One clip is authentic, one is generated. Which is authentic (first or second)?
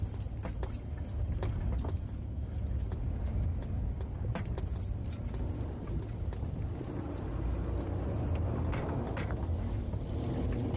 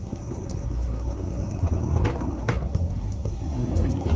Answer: first